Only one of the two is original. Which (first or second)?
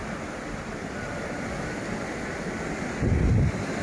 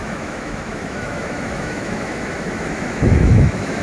first